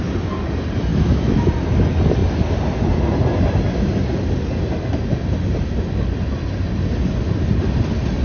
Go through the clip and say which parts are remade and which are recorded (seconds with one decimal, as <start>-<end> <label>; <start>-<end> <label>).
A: 0.0-0.9 recorded; 0.9-1.5 remade; 1.5-8.2 recorded